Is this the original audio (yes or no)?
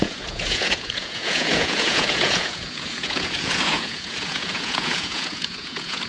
no